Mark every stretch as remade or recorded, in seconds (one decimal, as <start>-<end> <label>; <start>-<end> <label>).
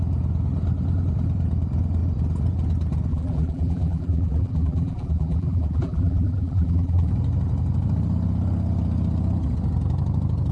0.0-3.1 recorded; 3.1-7.1 remade; 7.1-10.5 recorded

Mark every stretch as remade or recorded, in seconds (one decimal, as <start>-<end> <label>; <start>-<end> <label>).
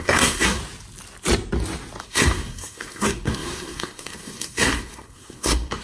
0.0-0.6 remade; 0.6-2.0 recorded; 2.0-5.8 remade